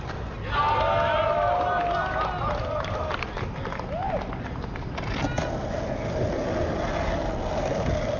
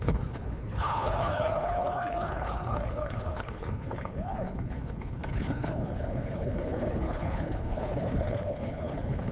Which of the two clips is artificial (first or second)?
second